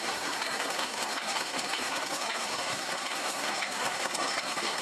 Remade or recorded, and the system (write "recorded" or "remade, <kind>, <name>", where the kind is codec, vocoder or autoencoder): remade, codec, SNAC